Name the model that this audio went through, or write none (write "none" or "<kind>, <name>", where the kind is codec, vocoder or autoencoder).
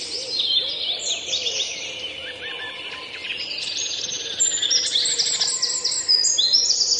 none